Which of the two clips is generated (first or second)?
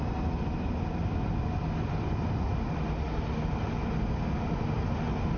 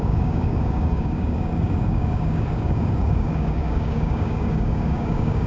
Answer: second